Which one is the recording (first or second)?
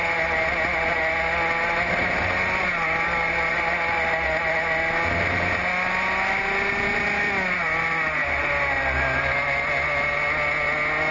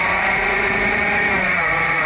first